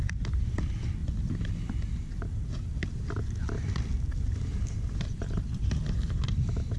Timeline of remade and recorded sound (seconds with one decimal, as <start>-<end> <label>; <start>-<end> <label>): 0.0-4.5 recorded; 4.5-5.7 remade; 5.7-6.8 recorded